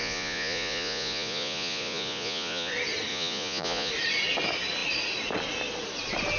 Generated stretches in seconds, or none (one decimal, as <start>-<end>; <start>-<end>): 0.0-2.7; 3.1-3.9